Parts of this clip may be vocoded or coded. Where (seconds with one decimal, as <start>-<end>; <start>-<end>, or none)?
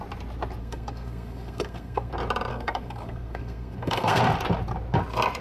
0.6-2.1; 2.5-4.2